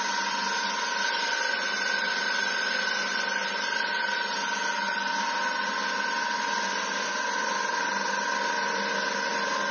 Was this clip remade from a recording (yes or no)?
no